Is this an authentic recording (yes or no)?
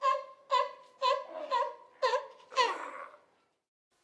yes